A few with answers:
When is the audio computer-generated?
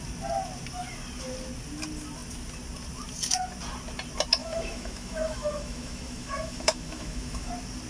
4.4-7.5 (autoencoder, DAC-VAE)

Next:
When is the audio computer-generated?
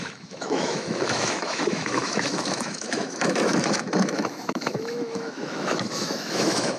0.0-6.8 (autoencoder, DAC-VAE)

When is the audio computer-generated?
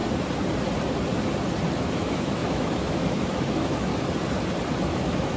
1.8-3.9 (autoencoder, DAC-VAE); 4.8-5.4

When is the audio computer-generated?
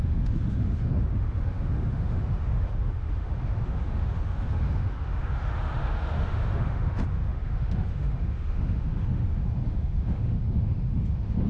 0.0-11.5 (autoencoder, DAC-VAE)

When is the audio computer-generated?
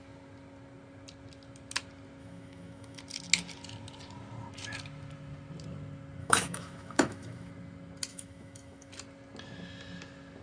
2.2-3.0 (autoencoder, DAC-VAE); 6.2-7.5; 8.1-8.9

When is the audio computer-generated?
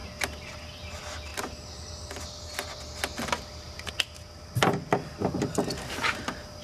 none